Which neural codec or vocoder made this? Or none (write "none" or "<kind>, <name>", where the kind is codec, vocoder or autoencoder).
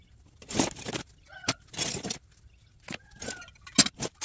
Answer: none